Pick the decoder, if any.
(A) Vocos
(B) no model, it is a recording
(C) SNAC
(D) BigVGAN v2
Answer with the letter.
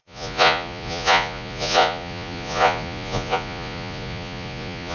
A